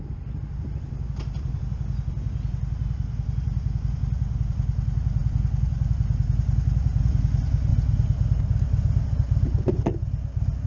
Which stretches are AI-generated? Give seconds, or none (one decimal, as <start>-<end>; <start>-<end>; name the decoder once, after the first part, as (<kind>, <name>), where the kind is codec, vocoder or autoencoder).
none